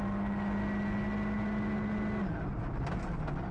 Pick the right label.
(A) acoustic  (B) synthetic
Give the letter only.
A